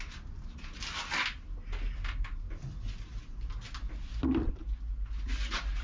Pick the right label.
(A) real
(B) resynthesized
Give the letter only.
A